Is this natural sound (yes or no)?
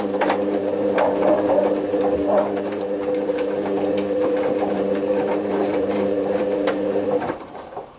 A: no